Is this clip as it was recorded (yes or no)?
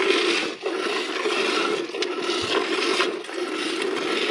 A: yes